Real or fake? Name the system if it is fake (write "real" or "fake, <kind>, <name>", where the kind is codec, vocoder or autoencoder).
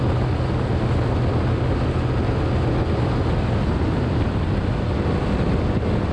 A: real